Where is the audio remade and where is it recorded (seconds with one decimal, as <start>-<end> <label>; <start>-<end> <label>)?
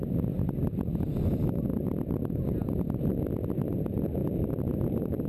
0.0-0.6 remade; 0.6-3.8 recorded; 3.8-4.2 remade; 4.2-4.7 recorded; 4.7-5.3 remade